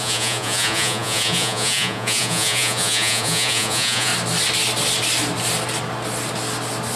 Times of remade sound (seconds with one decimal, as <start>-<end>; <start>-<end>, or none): 0.0-4.1